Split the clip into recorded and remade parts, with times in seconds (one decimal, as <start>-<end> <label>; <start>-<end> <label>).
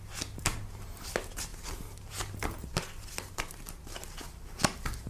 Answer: 0.0-5.1 recorded